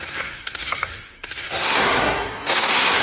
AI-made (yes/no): yes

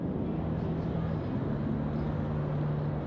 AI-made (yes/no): no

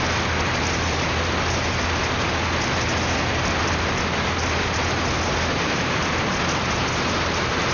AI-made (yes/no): no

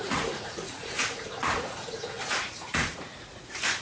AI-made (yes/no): yes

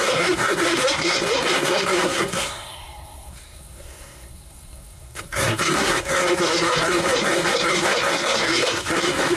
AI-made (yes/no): yes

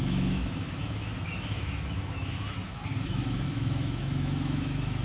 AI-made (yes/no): yes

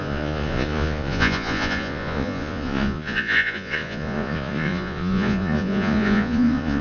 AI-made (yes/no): yes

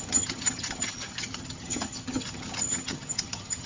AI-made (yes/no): yes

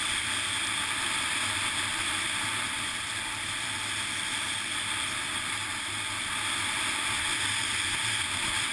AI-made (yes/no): no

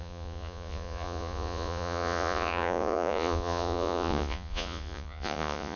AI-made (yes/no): yes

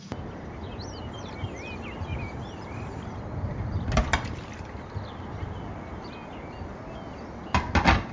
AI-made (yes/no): no